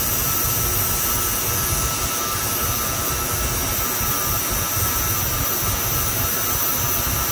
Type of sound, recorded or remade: recorded